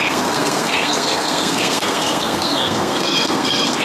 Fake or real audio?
fake